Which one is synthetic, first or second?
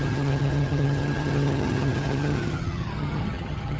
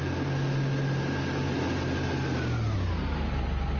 first